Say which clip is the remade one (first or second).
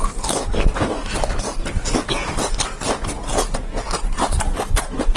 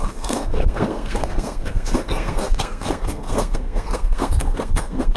second